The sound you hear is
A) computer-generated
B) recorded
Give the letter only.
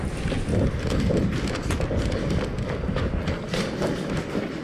B